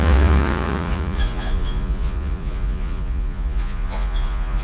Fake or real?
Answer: fake